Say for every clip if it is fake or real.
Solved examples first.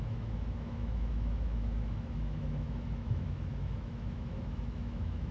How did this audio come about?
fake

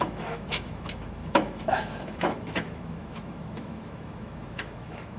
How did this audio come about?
fake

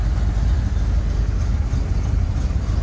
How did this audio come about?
real